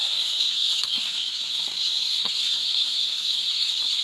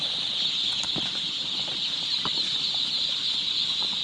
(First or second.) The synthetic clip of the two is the first